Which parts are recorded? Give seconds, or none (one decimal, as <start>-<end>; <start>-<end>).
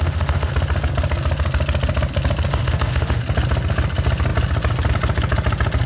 0.5-2.5; 3.2-5.9